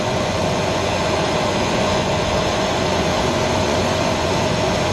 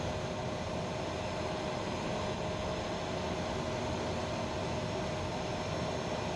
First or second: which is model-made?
first